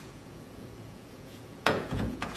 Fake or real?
fake